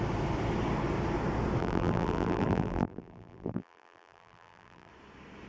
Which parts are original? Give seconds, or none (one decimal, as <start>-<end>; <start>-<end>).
0.0-1.6; 4.9-5.5